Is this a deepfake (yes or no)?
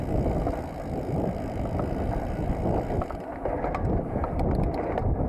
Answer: no